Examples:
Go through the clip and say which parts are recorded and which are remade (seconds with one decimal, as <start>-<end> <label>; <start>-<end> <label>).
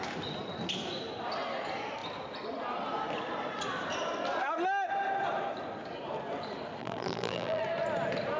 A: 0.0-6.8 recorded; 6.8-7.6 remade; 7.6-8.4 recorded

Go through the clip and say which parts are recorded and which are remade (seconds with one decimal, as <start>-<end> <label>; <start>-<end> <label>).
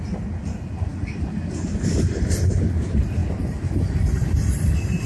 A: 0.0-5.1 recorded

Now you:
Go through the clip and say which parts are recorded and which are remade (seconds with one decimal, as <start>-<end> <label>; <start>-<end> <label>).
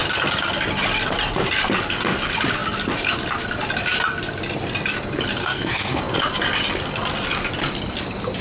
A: 0.0-5.4 recorded; 5.4-6.0 remade; 6.0-8.4 recorded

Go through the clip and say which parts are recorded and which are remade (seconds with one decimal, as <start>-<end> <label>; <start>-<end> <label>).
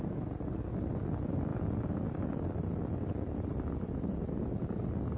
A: 0.0-1.5 recorded; 1.5-4.4 remade; 4.4-5.2 recorded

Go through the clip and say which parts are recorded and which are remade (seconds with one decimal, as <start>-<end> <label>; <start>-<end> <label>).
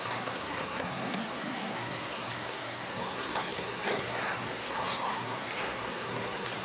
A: 0.0-6.6 remade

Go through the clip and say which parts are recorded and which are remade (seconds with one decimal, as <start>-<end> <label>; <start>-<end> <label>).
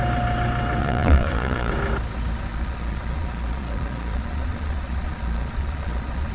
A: 0.0-0.8 recorded; 0.8-1.7 remade; 1.7-2.5 recorded; 2.5-6.3 remade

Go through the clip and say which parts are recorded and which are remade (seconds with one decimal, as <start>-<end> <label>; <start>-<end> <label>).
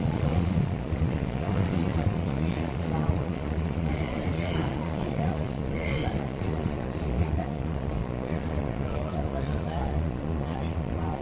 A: 0.0-11.2 remade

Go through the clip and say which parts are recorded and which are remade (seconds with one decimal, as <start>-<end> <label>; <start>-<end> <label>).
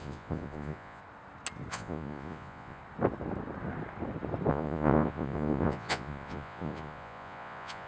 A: 0.0-1.0 remade; 1.0-1.7 recorded; 1.7-2.8 remade; 2.8-4.5 recorded; 4.5-7.9 remade